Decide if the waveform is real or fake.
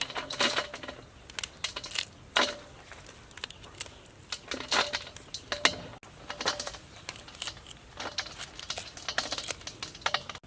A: real